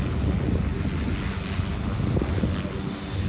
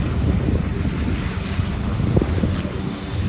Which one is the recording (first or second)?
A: first